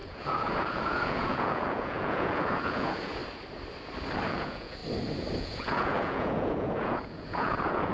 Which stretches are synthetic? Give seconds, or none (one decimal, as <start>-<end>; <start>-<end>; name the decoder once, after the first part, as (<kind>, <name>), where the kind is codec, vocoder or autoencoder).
0.0-3.2 (vocoder, Vocos); 4.3-4.8; 5.4-7.9